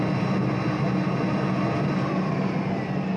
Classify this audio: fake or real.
real